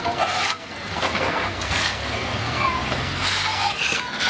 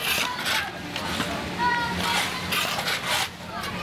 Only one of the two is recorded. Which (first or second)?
second